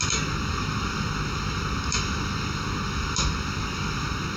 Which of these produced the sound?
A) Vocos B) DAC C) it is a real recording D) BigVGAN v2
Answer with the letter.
C